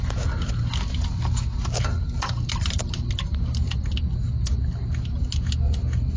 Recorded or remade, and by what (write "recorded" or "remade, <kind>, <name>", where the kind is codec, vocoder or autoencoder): recorded